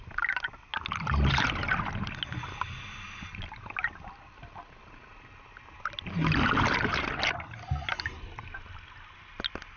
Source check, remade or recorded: recorded